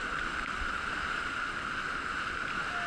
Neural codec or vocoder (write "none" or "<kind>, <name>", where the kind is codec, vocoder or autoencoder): none